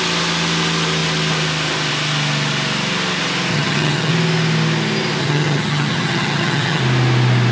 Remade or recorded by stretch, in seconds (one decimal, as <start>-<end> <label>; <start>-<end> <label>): 0.0-3.5 recorded; 3.5-4.1 remade; 4.1-5.2 recorded; 5.2-6.8 remade; 6.8-7.5 recorded